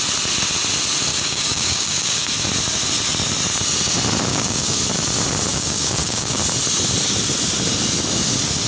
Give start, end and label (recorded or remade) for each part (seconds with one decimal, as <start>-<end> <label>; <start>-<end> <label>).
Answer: 0.0-1.1 recorded; 1.1-2.3 remade; 2.3-4.3 recorded; 4.3-4.8 remade; 4.8-5.5 recorded; 5.5-6.4 remade; 6.4-8.7 recorded